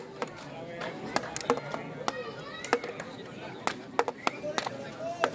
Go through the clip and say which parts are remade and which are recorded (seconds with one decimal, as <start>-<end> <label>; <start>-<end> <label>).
0.0-5.3 recorded